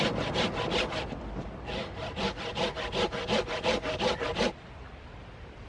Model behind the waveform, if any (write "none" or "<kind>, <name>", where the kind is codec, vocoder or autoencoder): none